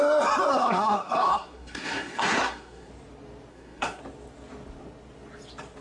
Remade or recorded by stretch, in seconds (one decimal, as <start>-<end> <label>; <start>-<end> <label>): 0.0-0.5 recorded; 0.5-2.9 remade; 2.9-3.5 recorded; 3.5-4.0 remade; 4.0-5.8 recorded